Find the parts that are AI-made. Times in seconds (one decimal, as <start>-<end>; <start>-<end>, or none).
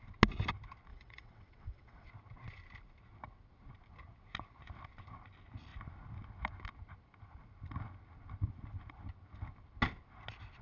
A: 0.9-2.1